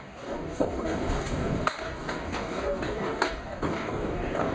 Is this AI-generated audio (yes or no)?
yes